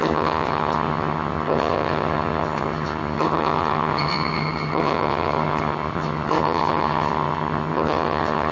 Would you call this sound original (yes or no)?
no